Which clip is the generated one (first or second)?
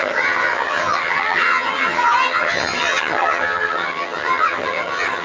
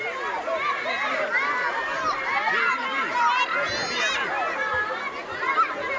first